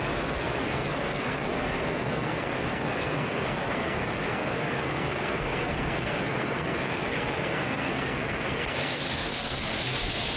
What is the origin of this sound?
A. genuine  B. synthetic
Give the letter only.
B